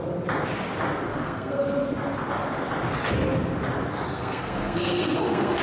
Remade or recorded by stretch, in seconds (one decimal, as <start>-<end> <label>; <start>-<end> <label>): 0.0-1.1 recorded; 1.1-1.7 remade; 1.7-4.1 recorded; 4.1-5.6 remade